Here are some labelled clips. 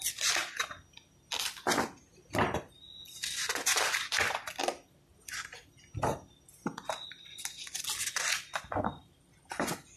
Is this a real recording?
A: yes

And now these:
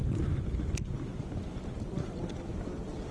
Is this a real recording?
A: yes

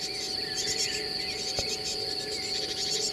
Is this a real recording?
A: yes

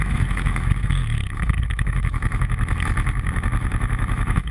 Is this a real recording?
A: no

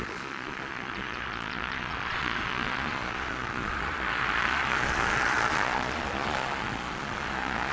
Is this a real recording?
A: no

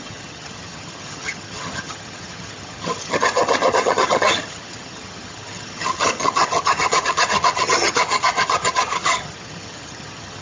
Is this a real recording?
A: no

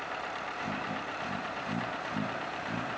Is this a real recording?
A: no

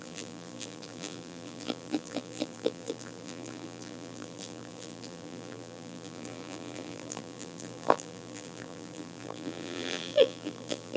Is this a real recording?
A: no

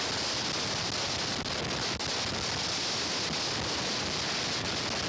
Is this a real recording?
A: yes